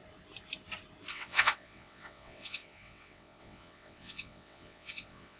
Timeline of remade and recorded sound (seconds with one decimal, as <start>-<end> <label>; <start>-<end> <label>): 0.0-1.1 recorded; 1.1-5.4 remade